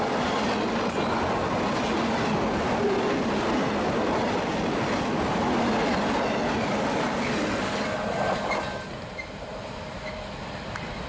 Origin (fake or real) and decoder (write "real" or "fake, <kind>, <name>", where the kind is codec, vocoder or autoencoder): real